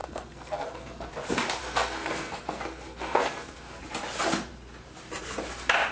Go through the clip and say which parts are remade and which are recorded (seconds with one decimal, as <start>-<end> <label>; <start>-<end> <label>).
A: 0.0-1.1 remade; 1.1-1.6 recorded; 1.6-3.8 remade; 3.8-5.9 recorded